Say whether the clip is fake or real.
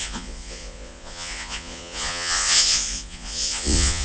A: fake